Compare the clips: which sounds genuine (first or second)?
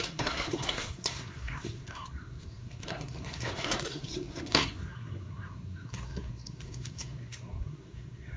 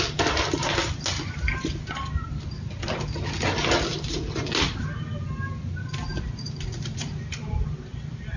second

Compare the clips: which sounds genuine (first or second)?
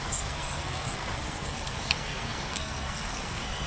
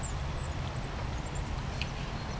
second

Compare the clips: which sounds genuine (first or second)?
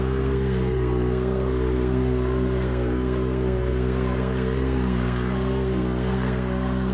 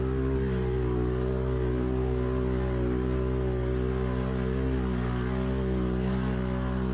second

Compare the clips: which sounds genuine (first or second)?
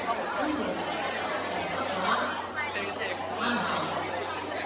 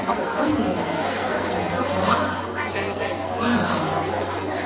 first